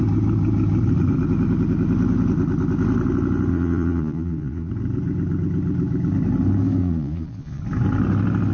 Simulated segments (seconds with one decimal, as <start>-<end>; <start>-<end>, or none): 3.5-4.7; 6.8-7.6